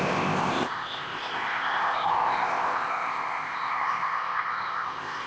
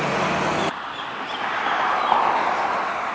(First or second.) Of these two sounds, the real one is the second